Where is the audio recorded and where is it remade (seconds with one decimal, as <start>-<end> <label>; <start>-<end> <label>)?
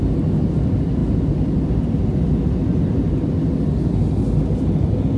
0.0-5.2 recorded